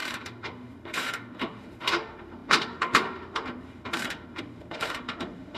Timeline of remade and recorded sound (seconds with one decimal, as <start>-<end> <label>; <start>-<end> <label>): 0.0-5.6 remade